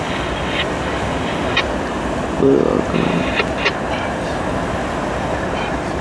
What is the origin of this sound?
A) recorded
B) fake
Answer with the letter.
A